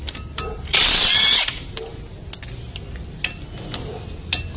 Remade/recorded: recorded